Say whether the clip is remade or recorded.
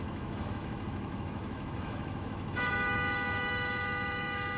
remade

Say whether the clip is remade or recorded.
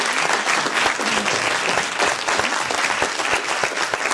recorded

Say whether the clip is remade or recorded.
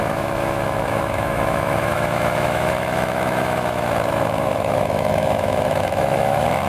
remade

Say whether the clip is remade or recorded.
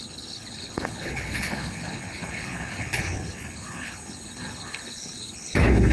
remade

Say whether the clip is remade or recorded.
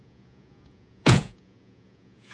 remade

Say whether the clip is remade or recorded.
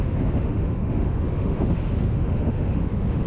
remade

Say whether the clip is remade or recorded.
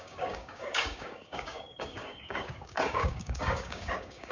remade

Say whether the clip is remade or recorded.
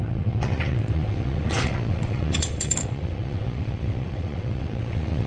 remade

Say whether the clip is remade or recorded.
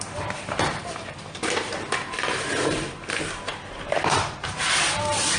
remade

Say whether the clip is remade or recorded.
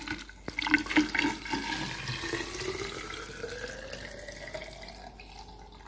recorded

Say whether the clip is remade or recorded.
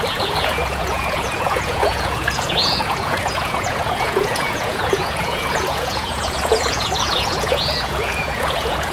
remade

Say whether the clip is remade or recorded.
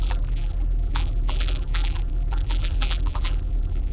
remade